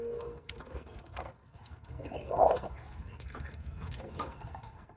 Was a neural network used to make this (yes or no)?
yes